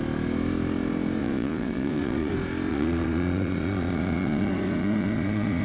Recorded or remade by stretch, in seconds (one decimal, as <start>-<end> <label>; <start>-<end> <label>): 0.0-1.2 recorded; 1.2-2.3 remade; 2.3-2.7 recorded; 2.7-5.6 remade